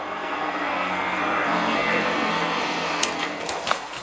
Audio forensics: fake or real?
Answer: fake